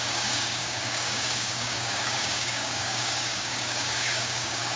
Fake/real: fake